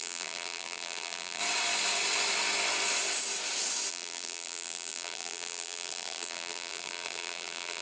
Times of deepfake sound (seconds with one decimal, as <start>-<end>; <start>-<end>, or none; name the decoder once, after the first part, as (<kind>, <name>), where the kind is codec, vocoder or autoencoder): 0.0-1.4 (vocoder, BigVGAN v2); 3.9-7.8